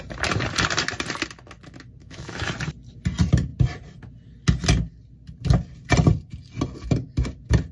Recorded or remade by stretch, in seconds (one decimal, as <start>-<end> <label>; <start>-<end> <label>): 0.0-2.0 recorded; 2.0-2.5 remade; 2.5-7.7 recorded